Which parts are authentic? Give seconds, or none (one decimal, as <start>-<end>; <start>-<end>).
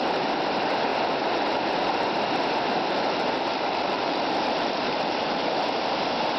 0.0-3.5; 5.3-6.4